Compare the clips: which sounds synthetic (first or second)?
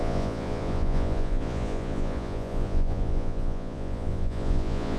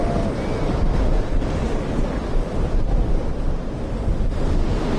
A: first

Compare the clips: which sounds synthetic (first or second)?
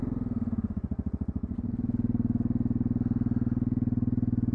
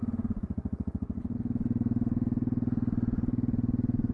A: second